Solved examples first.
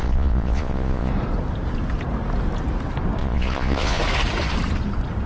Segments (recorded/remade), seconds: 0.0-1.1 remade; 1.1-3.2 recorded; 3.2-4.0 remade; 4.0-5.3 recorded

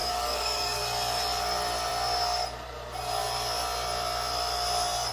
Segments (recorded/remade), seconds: 0.0-0.8 remade; 0.8-5.1 recorded

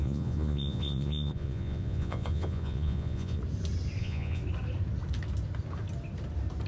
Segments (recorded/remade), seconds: 0.0-3.4 remade; 3.4-4.0 recorded; 4.0-4.4 remade; 4.4-6.7 recorded

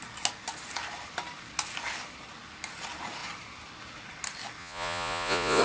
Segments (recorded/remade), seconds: 0.0-4.6 recorded; 4.6-5.6 remade